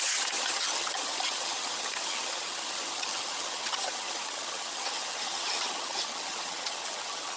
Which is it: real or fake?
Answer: fake